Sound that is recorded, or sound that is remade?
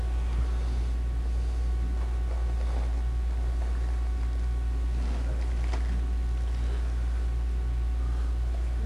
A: recorded